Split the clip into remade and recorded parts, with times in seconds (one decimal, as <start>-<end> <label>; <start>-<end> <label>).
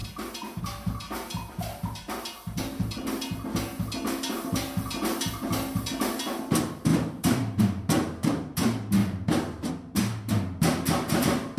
0.0-6.9 recorded; 6.9-7.6 remade; 7.6-9.0 recorded; 9.0-9.7 remade; 9.7-11.6 recorded